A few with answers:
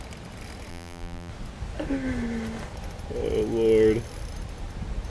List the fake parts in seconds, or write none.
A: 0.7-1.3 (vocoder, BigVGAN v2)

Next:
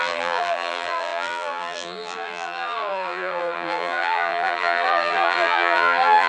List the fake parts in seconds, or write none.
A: 0.0-6.3 (vocoder, BigVGAN v2)

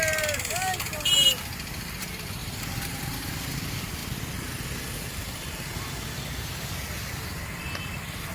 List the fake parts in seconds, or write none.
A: 2.4-3.5 (vocoder, BigVGAN v2)

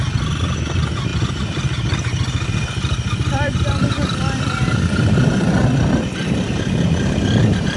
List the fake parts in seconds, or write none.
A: 1.1-5.6 (vocoder, BigVGAN v2)

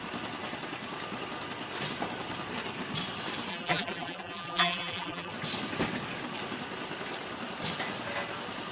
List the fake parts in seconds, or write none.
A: 3.5-5.3 (vocoder, BigVGAN v2)

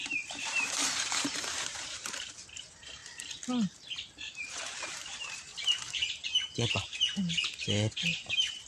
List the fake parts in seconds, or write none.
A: 0.0-3.0 (vocoder, BigVGAN v2); 4.4-5.5; 6.7-8.7

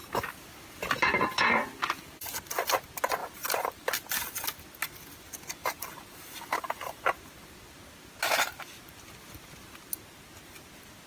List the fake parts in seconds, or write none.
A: 3.2-3.9 (vocoder, BigVGAN v2); 5.6-7.0